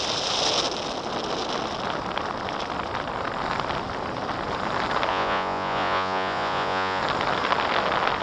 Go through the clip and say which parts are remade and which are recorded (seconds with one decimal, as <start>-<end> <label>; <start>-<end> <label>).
0.0-5.1 recorded; 5.1-7.0 remade; 7.0-8.2 recorded